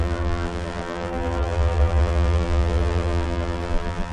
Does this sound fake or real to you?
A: fake